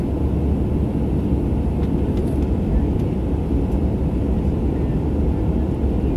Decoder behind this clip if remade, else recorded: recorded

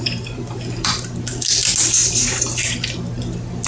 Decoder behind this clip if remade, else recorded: recorded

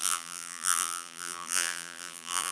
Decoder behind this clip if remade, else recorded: remade, vocoder, BigVGAN v2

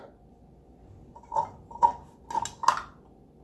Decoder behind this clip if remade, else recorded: recorded